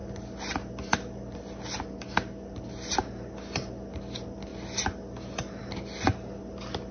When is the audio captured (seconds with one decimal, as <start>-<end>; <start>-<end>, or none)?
0.0-6.9